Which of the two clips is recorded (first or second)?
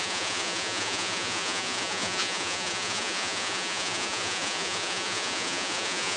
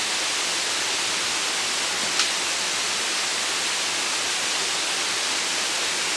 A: second